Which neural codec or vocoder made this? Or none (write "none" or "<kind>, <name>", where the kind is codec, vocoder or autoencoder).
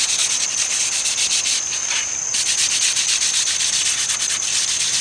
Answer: none